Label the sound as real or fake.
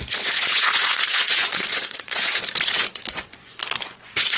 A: fake